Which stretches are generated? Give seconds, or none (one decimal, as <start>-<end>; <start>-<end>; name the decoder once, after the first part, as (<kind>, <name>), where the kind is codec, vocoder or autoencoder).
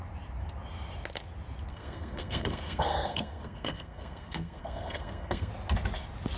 1.7-5.5 (codec, SNAC)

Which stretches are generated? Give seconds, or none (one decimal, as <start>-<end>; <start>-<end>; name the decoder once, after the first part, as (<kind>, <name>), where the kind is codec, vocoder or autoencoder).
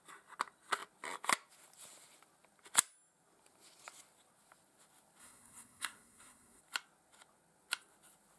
5.2-6.6 (codec, SNAC)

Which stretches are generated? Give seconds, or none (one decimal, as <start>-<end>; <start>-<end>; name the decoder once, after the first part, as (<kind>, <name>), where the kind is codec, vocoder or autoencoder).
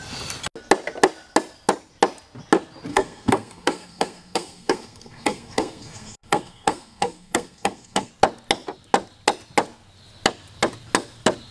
2.9-8.1 (codec, SNAC)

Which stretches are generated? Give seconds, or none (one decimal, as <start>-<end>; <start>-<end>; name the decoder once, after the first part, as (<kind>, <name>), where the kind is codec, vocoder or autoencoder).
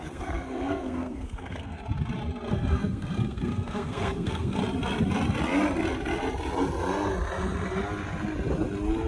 0.0-1.8 (codec, SNAC); 2.5-4.6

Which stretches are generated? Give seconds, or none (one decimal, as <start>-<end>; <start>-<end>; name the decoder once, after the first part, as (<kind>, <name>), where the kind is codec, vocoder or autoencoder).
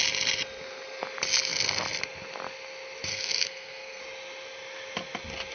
3.1-4.0 (codec, SNAC)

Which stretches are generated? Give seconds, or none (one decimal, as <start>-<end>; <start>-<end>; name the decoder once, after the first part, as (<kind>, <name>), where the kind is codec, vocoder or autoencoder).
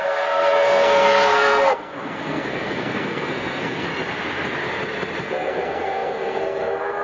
0.0-3.9 (codec, SNAC); 5.2-7.0